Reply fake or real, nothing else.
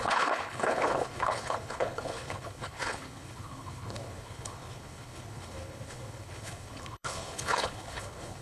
fake